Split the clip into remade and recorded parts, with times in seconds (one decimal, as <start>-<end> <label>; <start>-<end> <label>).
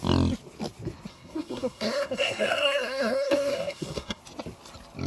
0.0-1.1 recorded; 1.1-4.2 remade; 4.2-5.1 recorded